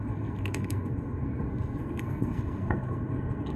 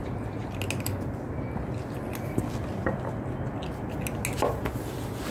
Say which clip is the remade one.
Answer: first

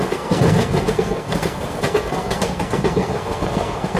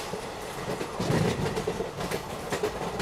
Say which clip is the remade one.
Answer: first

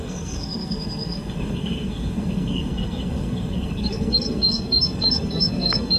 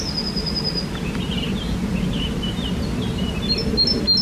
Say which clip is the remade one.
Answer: first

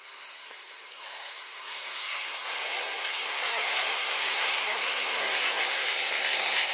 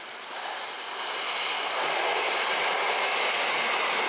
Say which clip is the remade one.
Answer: first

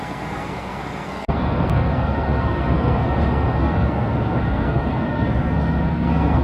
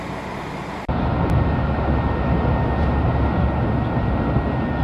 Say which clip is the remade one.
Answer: first